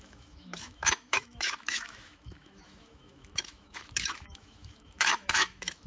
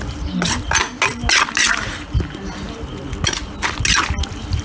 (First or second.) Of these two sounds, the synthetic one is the first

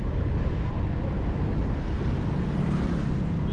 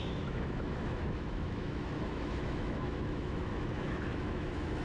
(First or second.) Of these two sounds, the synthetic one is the second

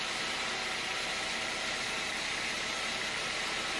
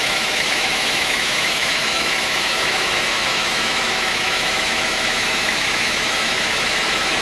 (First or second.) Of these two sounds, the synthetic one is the second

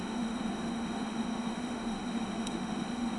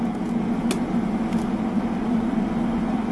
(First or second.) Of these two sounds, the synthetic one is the first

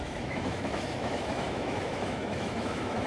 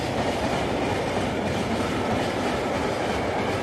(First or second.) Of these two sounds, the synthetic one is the first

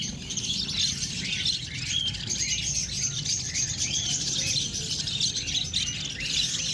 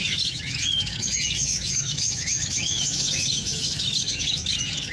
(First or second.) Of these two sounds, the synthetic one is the second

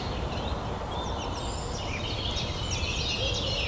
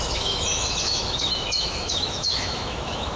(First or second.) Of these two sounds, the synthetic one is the second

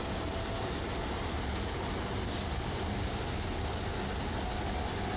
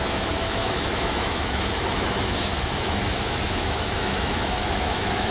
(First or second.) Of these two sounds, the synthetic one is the second